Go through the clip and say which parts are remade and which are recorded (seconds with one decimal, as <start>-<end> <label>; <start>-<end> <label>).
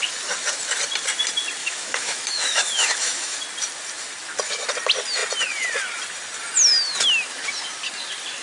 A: 0.0-1.6 recorded; 1.6-3.4 remade; 3.4-8.4 recorded